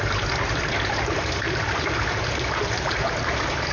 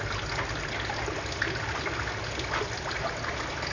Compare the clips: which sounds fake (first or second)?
first